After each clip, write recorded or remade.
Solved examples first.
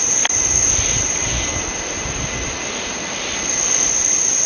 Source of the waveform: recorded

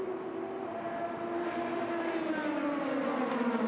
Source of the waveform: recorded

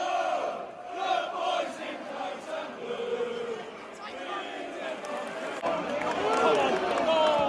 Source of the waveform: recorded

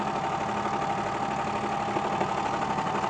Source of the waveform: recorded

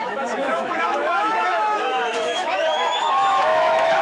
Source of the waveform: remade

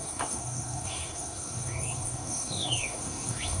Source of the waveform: remade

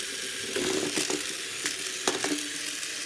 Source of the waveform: recorded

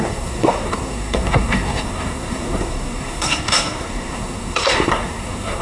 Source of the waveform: remade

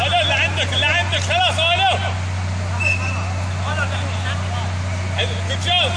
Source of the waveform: recorded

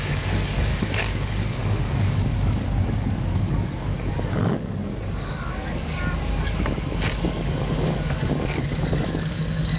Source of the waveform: remade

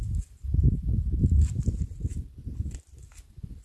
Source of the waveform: recorded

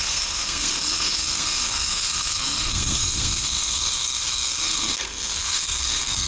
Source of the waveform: remade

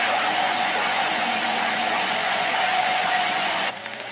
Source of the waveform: remade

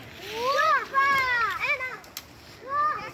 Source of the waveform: recorded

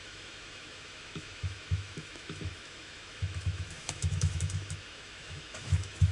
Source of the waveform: remade